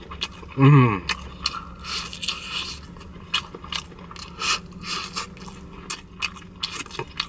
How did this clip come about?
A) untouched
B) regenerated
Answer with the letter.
A